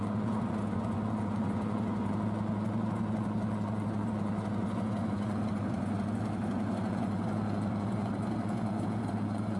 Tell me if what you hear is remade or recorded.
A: remade